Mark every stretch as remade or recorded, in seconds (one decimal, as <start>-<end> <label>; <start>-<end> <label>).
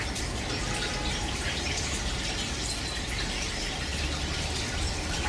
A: 0.0-5.3 recorded